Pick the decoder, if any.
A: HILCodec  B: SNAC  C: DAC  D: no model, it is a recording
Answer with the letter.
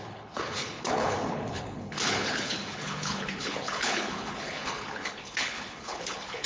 A